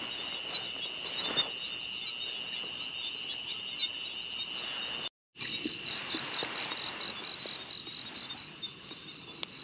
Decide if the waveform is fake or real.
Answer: real